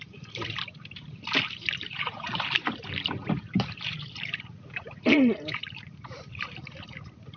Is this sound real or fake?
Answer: fake